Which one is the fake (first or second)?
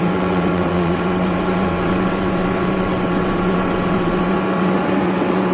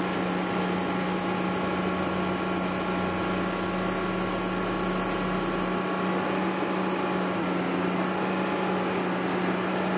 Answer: first